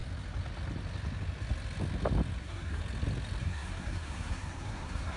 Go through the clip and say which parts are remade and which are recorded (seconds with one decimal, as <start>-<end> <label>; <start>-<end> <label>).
0.0-2.4 recorded; 2.4-2.8 remade; 2.8-3.4 recorded; 3.4-5.2 remade